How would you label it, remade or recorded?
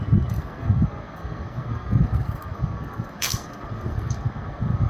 remade